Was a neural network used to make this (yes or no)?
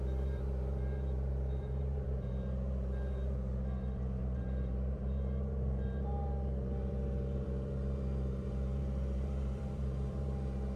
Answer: yes